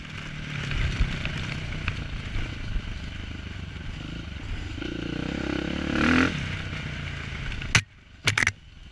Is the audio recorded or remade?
recorded